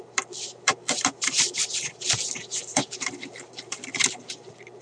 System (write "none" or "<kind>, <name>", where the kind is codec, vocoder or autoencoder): vocoder, BigVGAN v2